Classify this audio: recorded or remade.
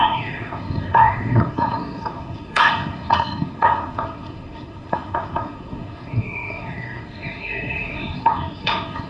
remade